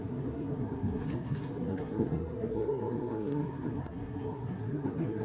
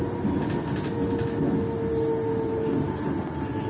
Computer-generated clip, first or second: first